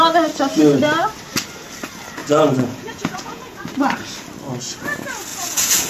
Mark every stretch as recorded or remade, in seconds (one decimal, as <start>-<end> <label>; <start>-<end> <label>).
0.0-2.2 recorded; 2.2-3.6 remade; 3.6-5.3 recorded; 5.3-5.9 remade